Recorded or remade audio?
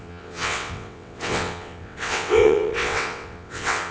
remade